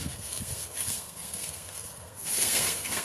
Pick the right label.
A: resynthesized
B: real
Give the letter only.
A